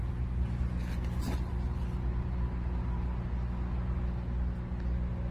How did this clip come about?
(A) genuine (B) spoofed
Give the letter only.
A